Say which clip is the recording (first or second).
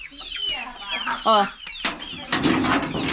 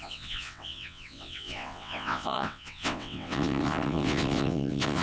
first